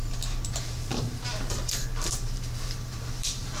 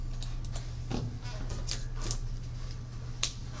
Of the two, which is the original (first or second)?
second